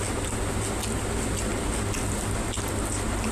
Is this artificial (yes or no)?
no